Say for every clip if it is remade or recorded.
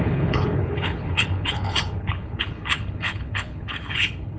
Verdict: remade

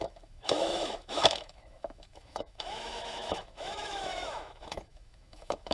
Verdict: remade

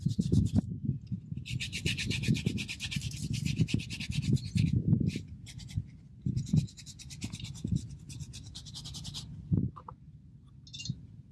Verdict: recorded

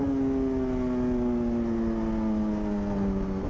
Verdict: recorded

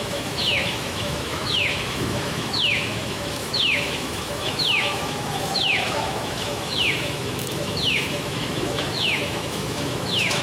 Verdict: remade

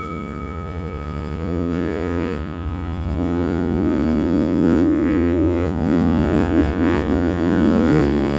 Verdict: remade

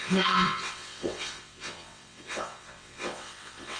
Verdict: remade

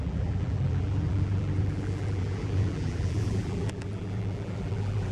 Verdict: remade